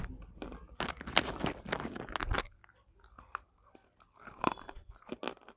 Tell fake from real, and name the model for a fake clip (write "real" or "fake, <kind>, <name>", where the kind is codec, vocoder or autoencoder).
real